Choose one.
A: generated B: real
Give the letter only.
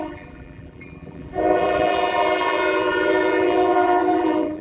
A